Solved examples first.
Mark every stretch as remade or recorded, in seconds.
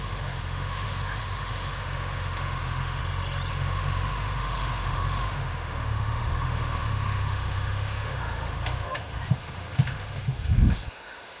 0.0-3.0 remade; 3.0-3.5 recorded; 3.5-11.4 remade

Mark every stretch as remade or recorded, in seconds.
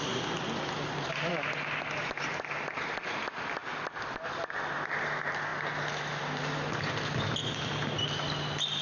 0.0-8.8 recorded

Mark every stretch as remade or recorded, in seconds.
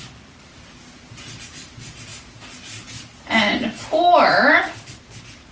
0.0-5.5 recorded